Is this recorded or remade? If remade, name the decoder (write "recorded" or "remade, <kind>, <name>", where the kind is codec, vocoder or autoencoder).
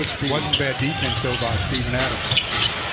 recorded